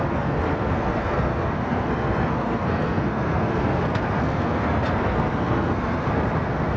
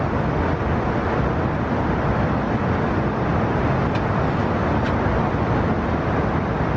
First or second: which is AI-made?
first